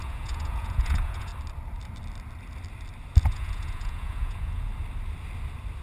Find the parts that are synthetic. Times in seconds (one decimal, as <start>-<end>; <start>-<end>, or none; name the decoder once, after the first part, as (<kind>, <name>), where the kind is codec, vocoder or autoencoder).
0.0-1.3 (vocoder, Vocos); 3.2-4.7